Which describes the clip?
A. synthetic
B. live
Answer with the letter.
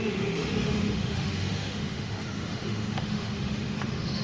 A